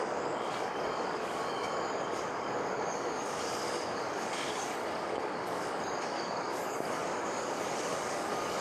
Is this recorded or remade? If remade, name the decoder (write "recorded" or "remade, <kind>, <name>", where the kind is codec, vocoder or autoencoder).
remade, codec, DAC